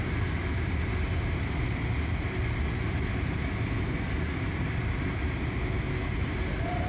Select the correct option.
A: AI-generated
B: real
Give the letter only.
B